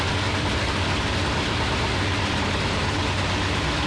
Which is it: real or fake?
real